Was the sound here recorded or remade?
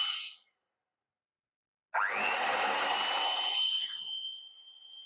recorded